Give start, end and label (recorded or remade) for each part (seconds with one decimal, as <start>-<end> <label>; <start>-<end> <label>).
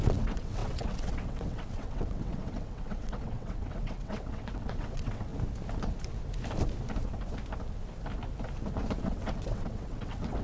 0.0-5.3 remade; 5.3-9.0 recorded; 9.0-10.4 remade